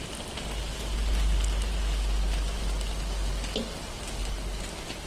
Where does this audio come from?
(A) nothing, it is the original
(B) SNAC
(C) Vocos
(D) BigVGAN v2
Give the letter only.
A